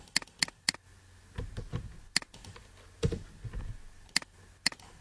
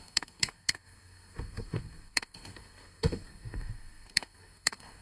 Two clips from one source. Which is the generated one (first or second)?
second